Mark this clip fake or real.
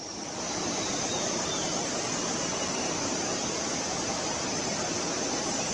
real